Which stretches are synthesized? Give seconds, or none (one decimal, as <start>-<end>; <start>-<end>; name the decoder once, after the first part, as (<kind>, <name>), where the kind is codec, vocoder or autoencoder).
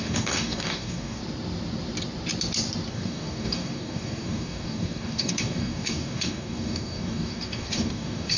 0.0-1.2 (codec, DAC); 2.9-8.4